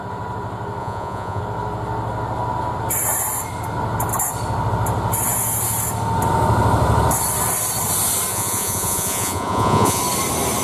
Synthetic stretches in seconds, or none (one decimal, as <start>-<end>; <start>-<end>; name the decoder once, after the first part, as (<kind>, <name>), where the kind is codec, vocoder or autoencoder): 0.8-1.4 (vocoder, Vocos); 8.3-10.0